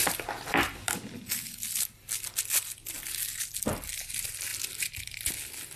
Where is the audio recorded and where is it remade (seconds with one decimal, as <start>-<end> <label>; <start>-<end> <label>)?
0.0-5.8 recorded